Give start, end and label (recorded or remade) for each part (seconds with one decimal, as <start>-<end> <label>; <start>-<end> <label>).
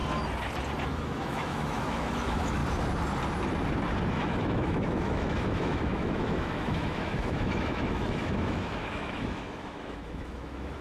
0.0-0.8 recorded; 0.8-2.6 remade; 2.6-4.1 recorded; 4.1-10.8 remade